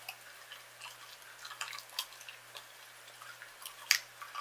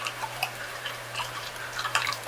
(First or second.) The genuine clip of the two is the first